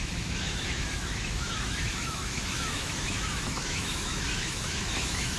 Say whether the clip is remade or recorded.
remade